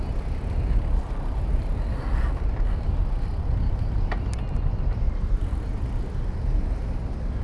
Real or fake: real